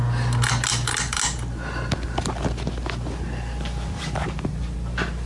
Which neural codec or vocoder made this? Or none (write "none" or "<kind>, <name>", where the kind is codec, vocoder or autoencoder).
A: none